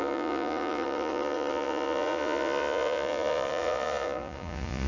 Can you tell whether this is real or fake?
fake